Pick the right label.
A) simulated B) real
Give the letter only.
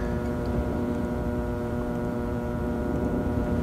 A